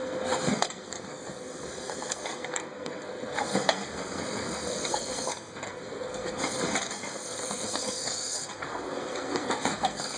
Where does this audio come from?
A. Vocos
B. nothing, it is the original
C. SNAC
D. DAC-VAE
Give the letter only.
C